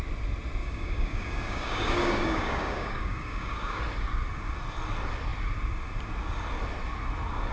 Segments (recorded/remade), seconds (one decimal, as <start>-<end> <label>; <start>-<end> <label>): 0.0-0.6 recorded; 0.6-3.8 remade; 3.8-7.5 recorded